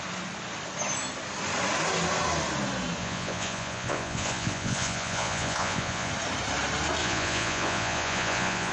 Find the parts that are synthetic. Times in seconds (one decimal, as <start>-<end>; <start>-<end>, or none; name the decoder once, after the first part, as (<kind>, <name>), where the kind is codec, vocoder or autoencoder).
3.0-6.1 (vocoder, Vocos); 7.0-8.7